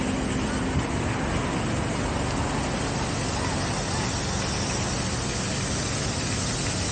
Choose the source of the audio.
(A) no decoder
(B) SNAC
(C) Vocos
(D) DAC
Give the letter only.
A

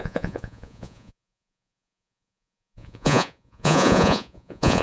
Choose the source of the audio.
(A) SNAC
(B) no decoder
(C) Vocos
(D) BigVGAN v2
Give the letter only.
C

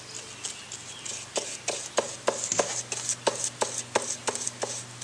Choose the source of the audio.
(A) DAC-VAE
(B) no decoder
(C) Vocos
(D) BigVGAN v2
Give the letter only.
B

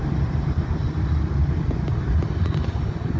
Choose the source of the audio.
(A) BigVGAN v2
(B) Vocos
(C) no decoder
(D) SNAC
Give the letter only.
C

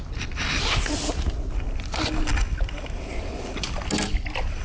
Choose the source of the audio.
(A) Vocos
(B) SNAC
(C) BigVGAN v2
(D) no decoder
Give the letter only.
D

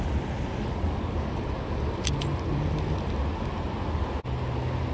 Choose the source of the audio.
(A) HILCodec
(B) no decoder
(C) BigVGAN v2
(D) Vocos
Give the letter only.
B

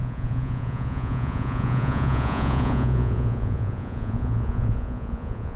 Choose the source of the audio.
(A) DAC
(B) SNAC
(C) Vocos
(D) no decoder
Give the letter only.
C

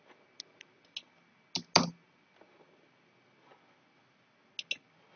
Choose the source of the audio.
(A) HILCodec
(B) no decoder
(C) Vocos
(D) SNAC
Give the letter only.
B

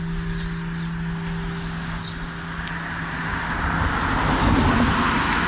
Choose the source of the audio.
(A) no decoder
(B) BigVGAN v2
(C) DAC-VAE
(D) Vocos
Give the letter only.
A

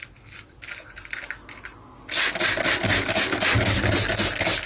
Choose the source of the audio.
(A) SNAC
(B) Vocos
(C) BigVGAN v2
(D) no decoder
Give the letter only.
D